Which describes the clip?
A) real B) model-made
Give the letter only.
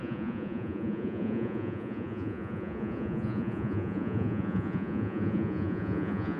B